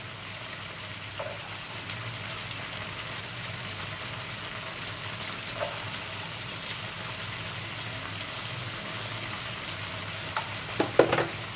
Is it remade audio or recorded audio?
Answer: recorded